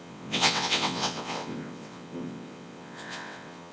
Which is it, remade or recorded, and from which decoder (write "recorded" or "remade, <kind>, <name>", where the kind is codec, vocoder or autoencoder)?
remade, vocoder, WaveNeXt